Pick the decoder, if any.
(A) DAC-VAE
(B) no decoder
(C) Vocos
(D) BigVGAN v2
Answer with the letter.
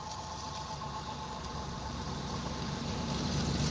D